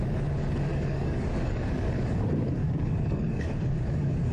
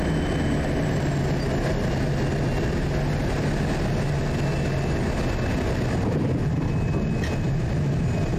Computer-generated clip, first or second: first